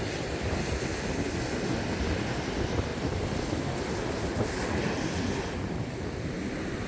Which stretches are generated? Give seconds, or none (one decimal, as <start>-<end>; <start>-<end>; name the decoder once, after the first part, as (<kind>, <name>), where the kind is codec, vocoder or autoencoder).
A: none